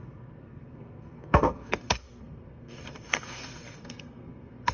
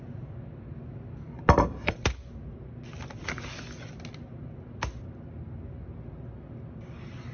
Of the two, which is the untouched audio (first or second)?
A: second